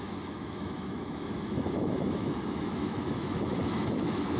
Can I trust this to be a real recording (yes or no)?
no